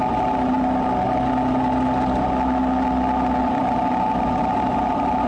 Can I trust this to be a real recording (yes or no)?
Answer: yes